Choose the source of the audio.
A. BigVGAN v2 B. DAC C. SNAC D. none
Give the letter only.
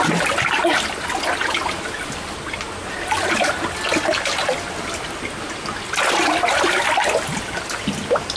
D